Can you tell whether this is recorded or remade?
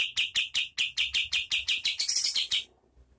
recorded